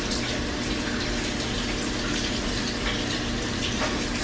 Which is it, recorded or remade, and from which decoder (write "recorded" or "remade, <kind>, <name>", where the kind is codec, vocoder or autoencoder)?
recorded